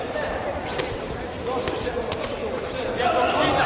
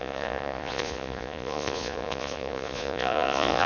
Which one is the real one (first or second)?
first